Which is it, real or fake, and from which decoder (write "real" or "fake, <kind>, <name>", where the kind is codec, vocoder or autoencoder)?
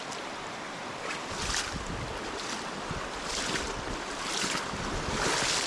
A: real